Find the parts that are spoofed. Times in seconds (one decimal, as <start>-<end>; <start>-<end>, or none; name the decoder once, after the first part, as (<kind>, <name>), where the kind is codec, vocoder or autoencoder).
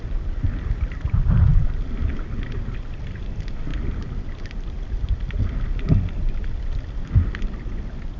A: none